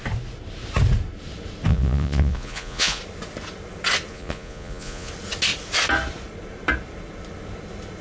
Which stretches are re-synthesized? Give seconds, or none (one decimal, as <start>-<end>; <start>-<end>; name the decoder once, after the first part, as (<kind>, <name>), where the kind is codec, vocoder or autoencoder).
1.7-3.0 (vocoder, Vocos); 4.1-5.1